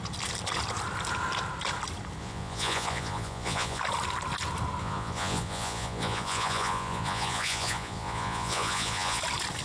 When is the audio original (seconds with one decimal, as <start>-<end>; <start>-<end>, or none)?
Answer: 0.0-2.2; 3.8-4.8; 9.2-9.6

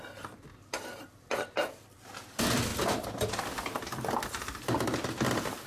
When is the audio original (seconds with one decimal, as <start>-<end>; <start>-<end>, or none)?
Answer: none

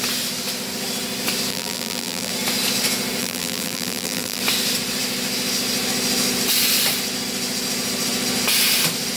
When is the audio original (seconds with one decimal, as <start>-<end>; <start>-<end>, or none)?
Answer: 0.0-1.5; 2.3-3.2; 4.4-9.2

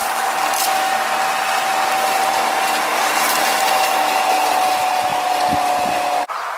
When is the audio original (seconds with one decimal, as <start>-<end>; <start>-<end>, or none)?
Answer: 0.0-2.9; 3.7-6.6

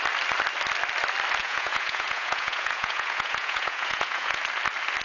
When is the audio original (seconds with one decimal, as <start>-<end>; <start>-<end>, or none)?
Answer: 0.0-1.4; 4.4-5.0